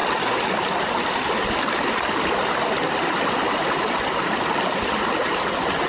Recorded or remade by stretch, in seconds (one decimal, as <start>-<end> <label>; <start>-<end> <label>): 0.0-5.9 recorded